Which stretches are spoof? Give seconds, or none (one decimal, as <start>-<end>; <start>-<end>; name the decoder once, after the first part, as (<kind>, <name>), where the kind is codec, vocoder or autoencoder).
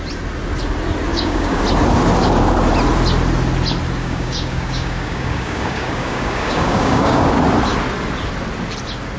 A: 1.1-1.6 (codec, DAC); 4.0-7.3